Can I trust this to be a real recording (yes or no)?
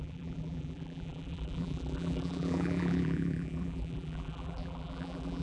no